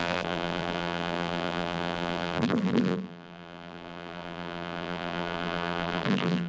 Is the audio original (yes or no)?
no